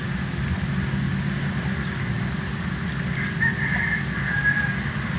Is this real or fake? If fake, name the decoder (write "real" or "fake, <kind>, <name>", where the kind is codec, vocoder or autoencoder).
real